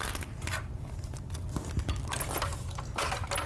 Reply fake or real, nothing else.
real